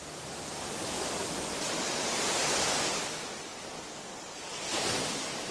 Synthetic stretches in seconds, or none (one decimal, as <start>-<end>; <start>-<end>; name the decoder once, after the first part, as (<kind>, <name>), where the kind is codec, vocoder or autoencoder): 0.8-1.3 (codec, DAC)

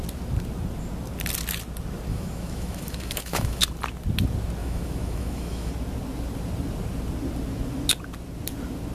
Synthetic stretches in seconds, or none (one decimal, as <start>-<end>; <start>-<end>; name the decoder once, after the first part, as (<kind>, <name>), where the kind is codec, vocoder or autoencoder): 2.1-3.6 (autoencoder, DAC-VAE); 4.6-5.7

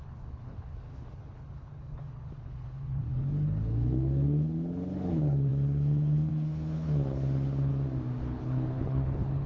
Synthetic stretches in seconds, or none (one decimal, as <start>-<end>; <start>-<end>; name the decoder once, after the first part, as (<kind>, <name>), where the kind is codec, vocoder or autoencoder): 0.0-7.7 (codec, HILCodec); 8.2-9.5

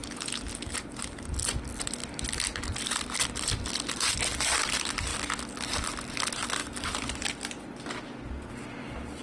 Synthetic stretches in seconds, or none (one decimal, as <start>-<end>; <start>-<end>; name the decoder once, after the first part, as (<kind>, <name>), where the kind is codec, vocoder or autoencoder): none

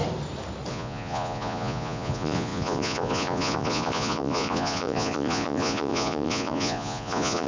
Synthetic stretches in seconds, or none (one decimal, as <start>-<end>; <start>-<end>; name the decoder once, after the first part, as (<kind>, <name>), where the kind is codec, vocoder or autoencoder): 0.7-7.5 (vocoder, Vocos)